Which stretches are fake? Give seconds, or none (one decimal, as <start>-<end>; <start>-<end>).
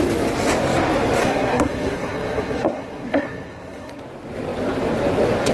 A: 1.2-4.0